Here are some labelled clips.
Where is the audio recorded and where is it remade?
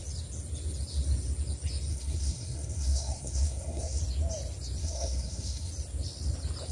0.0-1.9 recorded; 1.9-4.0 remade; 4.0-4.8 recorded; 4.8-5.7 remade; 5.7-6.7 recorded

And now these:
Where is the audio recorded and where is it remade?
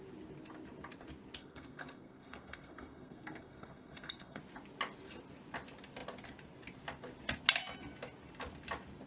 0.0-1.4 recorded; 1.4-4.4 remade; 4.4-9.1 recorded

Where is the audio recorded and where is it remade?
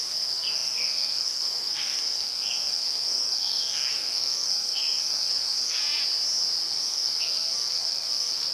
0.0-5.8 remade; 5.8-6.6 recorded; 6.6-8.5 remade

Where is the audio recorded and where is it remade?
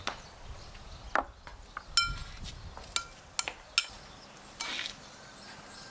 0.0-5.9 recorded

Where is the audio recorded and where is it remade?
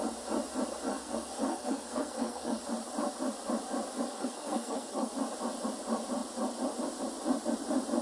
0.0-0.9 recorded; 0.9-2.6 remade; 2.6-4.1 recorded; 4.1-5.1 remade; 5.1-8.0 recorded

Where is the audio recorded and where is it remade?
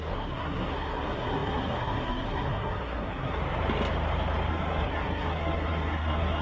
0.0-3.4 remade; 3.4-4.5 recorded; 4.5-6.4 remade